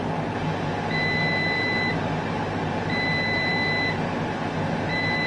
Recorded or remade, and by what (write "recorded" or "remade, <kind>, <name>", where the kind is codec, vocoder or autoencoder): recorded